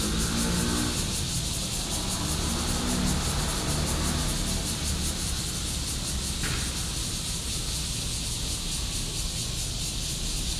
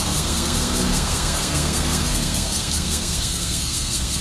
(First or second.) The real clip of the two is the first